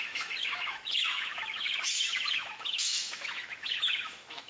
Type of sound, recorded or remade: remade